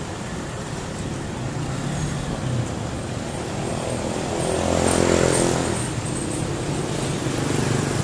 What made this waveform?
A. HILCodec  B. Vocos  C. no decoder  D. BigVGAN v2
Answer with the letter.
C